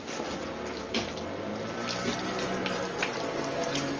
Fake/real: real